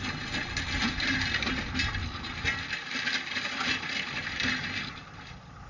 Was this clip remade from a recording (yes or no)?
yes